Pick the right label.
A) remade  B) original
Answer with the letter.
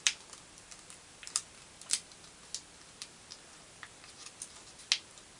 B